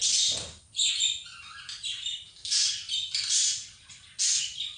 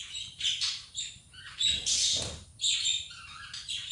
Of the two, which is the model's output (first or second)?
second